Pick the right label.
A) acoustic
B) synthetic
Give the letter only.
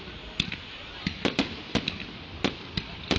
A